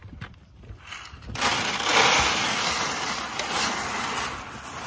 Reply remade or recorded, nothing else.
recorded